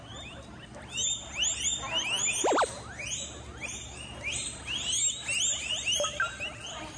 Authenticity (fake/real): real